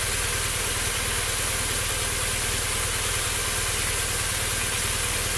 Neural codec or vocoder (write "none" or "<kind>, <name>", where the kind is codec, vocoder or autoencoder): none